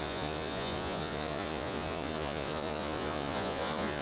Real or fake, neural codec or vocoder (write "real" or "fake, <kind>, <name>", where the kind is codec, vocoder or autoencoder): fake, vocoder, Vocos